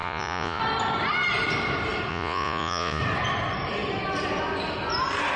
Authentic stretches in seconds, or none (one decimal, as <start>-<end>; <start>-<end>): 0.6-2.1; 3.0-5.4